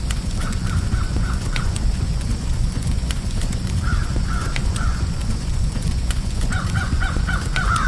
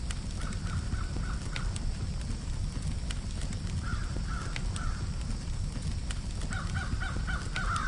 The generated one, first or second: first